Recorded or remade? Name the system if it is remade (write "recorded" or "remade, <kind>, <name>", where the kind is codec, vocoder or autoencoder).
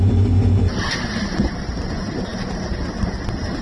recorded